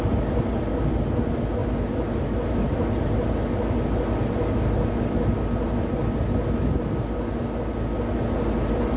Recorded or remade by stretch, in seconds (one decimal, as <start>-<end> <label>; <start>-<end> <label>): 0.0-9.0 recorded